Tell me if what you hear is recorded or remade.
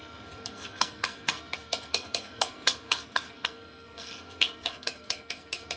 remade